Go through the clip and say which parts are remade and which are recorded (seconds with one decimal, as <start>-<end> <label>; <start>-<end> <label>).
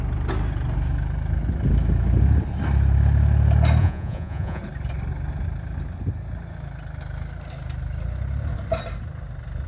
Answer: 0.0-3.8 recorded; 3.8-4.6 remade; 4.6-9.7 recorded